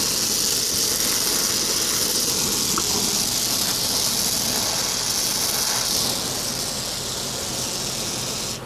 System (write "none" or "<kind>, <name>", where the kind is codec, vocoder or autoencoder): none